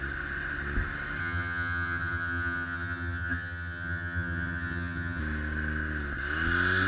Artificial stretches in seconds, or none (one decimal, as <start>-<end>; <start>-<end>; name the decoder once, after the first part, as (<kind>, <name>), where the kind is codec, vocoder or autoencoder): 1.2-5.2 (vocoder, HiFi-GAN)